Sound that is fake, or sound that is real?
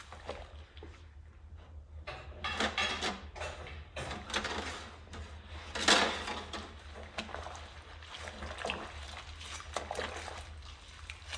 real